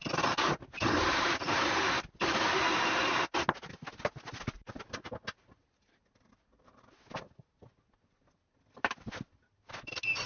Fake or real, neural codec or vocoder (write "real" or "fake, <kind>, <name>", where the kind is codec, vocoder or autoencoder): real